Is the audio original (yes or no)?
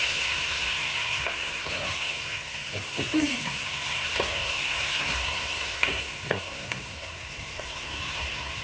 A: no